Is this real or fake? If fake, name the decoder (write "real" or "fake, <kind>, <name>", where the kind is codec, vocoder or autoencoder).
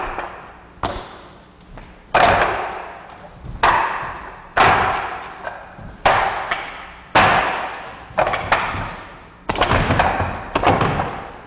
real